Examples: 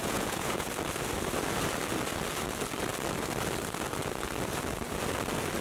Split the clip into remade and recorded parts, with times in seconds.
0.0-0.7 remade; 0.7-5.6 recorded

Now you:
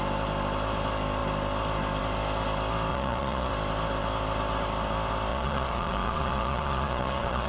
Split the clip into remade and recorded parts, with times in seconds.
0.0-2.9 recorded; 2.9-3.5 remade; 3.5-5.3 recorded; 5.3-7.5 remade

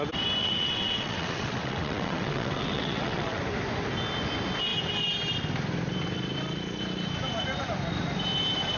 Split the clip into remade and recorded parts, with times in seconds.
0.0-0.4 recorded; 0.4-3.4 remade; 3.4-8.8 recorded

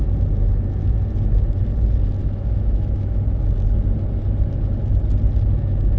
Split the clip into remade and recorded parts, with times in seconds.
0.0-2.2 recorded; 2.2-3.2 remade; 3.2-6.0 recorded

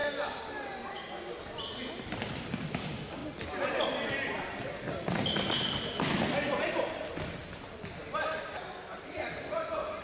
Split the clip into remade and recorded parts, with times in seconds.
0.0-2.5 recorded; 2.5-3.2 remade; 3.2-8.4 recorded; 8.4-10.0 remade

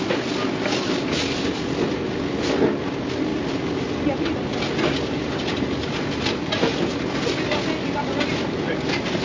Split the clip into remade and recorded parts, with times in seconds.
0.0-9.2 recorded

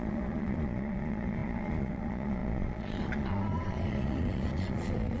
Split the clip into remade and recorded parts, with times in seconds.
0.0-5.2 remade

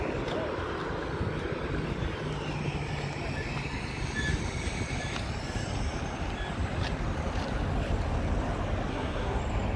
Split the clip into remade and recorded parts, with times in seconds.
0.0-8.9 recorded; 8.9-9.4 remade; 9.4-9.8 recorded